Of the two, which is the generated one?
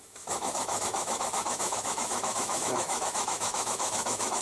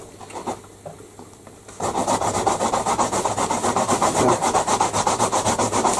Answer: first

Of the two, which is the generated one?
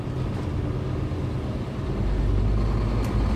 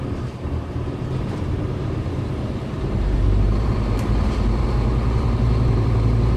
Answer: second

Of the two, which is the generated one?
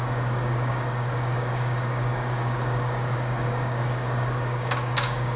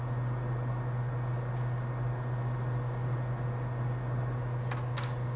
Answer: first